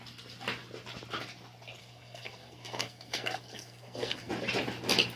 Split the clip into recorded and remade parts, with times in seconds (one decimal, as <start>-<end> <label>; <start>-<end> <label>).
0.0-1.8 recorded; 1.8-4.3 remade; 4.3-5.2 recorded